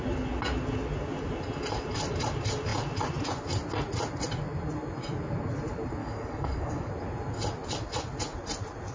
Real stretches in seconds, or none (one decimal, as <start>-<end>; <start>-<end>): 0.0-6.0; 6.9-8.9